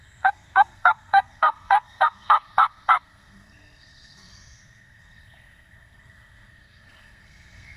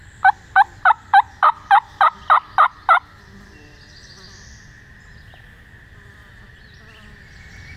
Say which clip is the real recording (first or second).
second